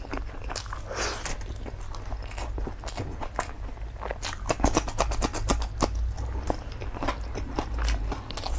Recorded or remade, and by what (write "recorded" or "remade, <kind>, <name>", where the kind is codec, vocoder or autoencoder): recorded